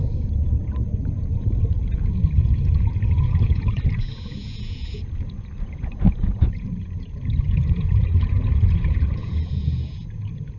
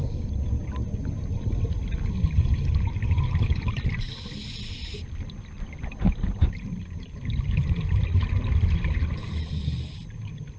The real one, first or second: second